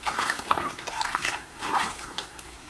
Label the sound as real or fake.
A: fake